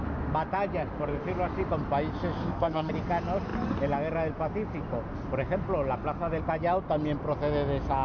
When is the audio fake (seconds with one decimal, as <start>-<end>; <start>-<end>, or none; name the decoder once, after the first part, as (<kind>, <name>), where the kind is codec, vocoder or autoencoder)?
2.4-2.9 (codec, SNAC)